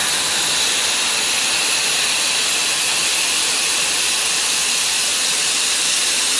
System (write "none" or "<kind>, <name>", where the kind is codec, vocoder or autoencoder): none